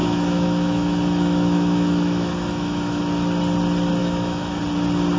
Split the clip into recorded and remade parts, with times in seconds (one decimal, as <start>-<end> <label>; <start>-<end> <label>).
0.0-3.0 remade; 3.0-4.0 recorded; 4.0-4.6 remade; 4.6-5.2 recorded